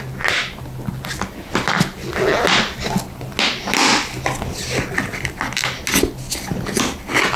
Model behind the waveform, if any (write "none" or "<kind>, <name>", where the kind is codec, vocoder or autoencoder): none